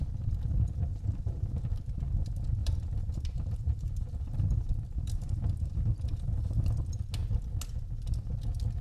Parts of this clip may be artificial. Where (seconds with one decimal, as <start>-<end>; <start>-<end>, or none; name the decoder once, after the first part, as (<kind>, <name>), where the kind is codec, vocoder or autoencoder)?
0.9-1.9 (vocoder, BigVGAN v2); 2.6-6.7